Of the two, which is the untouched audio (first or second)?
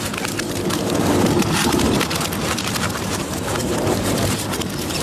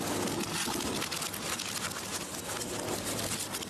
second